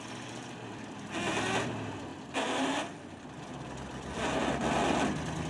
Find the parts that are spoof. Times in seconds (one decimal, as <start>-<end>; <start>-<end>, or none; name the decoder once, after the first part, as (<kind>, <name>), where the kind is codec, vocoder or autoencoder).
none